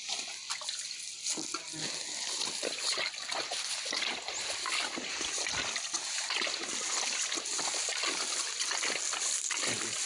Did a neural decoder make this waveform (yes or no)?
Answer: no